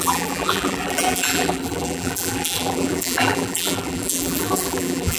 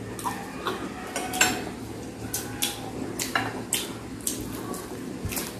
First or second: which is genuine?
second